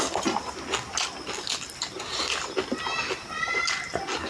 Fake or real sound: real